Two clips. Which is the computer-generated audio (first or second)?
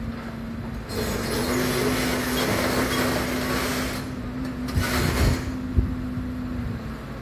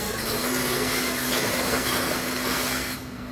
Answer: second